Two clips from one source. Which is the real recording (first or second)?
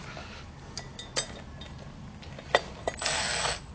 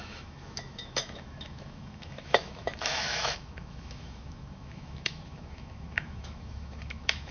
first